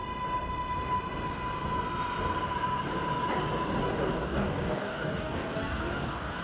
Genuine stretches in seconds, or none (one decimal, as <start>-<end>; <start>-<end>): 0.0-3.8